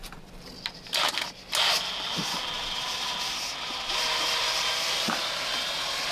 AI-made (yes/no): no